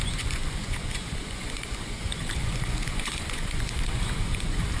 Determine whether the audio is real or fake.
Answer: fake